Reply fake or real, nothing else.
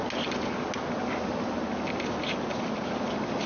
real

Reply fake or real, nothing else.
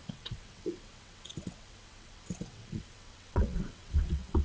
fake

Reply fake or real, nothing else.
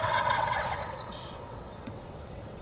fake